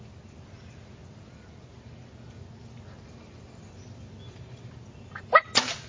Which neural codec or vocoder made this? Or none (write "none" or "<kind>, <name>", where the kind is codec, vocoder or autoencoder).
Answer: none